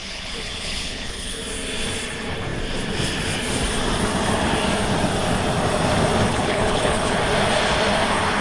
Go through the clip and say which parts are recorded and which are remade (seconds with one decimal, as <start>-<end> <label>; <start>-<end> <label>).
0.0-1.4 remade; 1.4-6.3 recorded; 6.3-7.2 remade; 7.2-8.4 recorded